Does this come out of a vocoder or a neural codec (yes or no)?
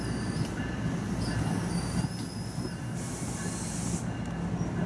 no